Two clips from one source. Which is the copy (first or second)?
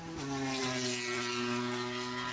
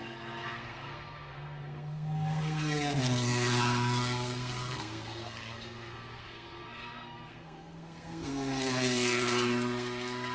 second